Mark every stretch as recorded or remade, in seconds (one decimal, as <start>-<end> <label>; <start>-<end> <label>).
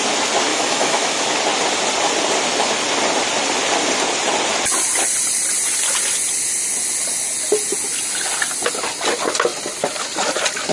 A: 0.0-0.5 recorded; 0.5-1.2 remade; 1.2-10.7 recorded